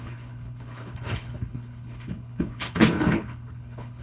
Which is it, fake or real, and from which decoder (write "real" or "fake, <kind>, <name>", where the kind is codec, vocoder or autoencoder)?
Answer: fake, codec, HILCodec